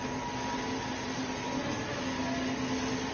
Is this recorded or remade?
recorded